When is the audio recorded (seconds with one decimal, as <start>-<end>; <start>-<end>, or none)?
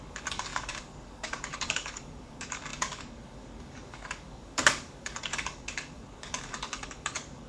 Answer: none